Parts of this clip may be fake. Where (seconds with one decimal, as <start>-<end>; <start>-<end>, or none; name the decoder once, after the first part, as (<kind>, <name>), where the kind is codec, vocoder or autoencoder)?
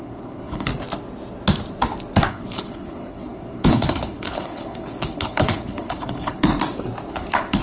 0.0-0.7 (codec, HILCodec); 2.3-6.5; 7.1-7.6